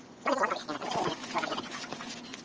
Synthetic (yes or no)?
yes